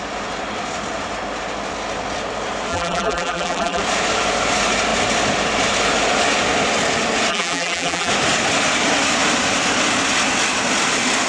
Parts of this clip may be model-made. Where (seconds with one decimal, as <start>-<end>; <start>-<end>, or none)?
2.7-3.8; 7.3-8.1